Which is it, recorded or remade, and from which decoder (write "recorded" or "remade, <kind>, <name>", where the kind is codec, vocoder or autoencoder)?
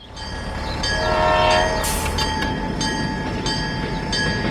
recorded